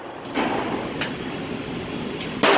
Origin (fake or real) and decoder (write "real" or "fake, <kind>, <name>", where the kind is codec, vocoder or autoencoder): real